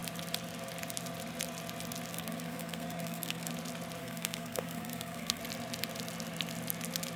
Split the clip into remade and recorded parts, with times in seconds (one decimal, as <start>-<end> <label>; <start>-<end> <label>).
0.0-2.1 recorded; 2.1-3.5 remade; 3.5-4.0 recorded; 4.0-5.4 remade; 5.4-7.2 recorded